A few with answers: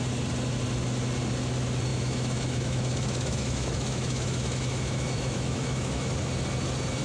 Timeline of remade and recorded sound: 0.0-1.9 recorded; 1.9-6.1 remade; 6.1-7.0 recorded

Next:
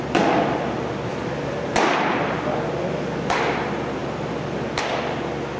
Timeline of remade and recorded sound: 0.0-5.6 recorded

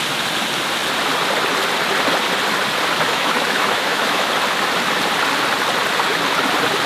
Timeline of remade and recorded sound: 0.0-3.1 recorded; 3.1-4.3 remade; 4.3-6.9 recorded

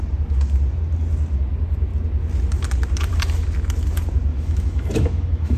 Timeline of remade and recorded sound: 0.0-4.3 recorded; 4.3-5.6 remade